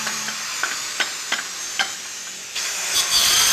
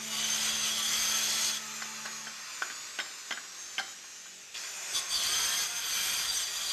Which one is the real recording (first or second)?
second